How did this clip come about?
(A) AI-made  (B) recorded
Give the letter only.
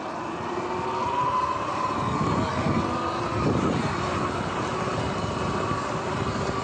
B